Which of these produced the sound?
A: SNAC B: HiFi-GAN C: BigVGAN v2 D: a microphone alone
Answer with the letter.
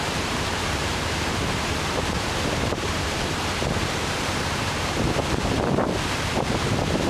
C